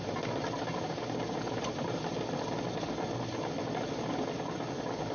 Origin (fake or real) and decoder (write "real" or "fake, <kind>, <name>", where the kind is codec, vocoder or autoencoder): real